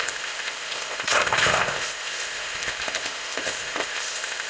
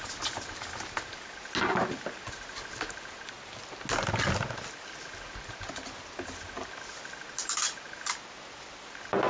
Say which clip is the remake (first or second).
first